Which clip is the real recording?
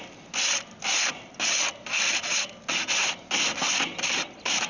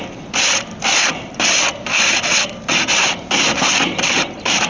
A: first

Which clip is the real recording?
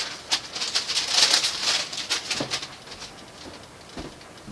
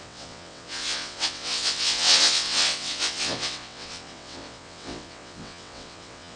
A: first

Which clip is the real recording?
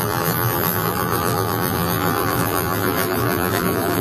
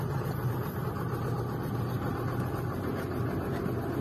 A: second